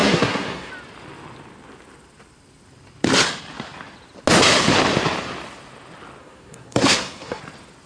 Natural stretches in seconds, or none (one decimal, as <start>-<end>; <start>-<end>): 0.7-6.2; 7.4-7.9